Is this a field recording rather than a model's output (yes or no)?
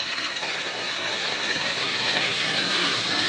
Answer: no